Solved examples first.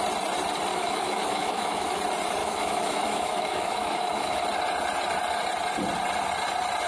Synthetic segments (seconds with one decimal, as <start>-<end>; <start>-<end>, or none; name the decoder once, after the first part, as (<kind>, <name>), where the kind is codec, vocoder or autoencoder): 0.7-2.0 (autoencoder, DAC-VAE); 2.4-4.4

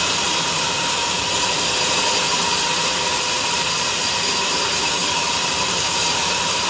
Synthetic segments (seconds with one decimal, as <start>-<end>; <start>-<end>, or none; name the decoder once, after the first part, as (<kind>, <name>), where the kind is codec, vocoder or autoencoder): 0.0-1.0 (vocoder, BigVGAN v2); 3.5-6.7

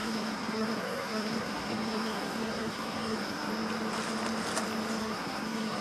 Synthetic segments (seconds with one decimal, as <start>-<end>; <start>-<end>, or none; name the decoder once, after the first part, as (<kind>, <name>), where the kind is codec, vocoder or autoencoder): 0.0-3.5 (codec, SNAC); 5.0-5.8

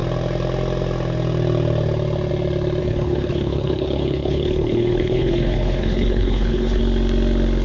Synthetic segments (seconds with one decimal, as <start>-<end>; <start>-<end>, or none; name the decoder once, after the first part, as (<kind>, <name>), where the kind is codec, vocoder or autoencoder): 2.8-6.8 (codec, HILCodec)